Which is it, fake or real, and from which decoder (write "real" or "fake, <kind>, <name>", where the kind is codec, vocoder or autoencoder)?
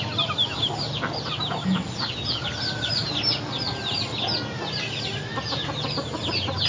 real